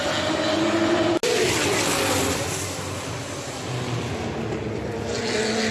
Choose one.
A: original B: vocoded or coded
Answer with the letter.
A